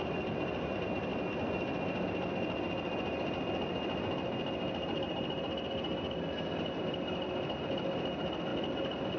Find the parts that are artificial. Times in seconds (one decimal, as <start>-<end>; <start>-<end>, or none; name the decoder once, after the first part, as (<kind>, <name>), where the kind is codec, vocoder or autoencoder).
none